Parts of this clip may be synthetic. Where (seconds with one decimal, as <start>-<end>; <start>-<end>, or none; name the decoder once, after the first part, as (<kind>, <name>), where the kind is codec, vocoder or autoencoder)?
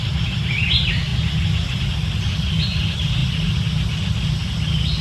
none